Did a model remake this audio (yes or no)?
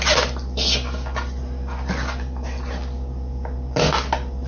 no